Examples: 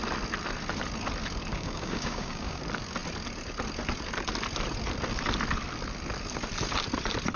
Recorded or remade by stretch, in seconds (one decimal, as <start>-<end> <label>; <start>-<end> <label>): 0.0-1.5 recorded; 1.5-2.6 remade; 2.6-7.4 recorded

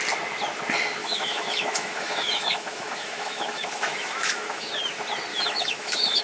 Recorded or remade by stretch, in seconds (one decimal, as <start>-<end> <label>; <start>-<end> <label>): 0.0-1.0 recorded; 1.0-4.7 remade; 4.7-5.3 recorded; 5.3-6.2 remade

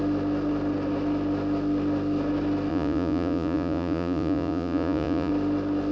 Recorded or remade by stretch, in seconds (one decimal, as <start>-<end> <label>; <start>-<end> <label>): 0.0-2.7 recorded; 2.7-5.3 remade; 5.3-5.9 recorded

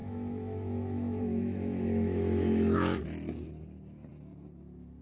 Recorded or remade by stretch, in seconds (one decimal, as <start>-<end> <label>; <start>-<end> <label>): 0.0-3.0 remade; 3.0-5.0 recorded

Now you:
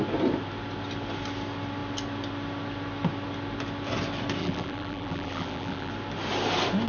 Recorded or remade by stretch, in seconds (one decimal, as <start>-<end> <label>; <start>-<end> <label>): 0.0-4.4 recorded; 4.4-5.9 remade; 5.9-6.9 recorded

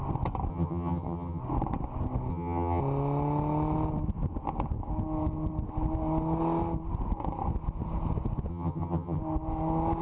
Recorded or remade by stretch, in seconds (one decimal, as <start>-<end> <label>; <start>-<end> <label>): 0.0-0.5 recorded; 0.5-1.4 remade; 1.4-2.3 recorded; 2.3-2.8 remade; 2.8-8.5 recorded; 8.5-9.2 remade; 9.2-10.0 recorded

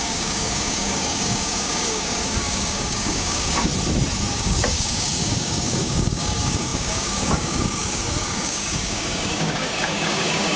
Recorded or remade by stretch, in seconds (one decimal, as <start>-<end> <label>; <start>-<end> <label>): 0.0-3.7 remade; 3.7-4.3 recorded; 4.3-10.6 remade